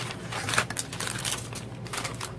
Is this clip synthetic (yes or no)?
no